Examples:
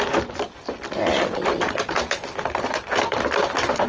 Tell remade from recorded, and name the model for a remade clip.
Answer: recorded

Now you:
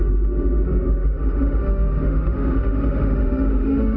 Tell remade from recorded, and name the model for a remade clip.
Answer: remade, autoencoder, DAC-VAE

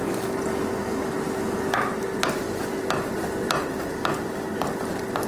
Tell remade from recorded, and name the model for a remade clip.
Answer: recorded